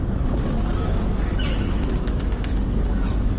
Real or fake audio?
fake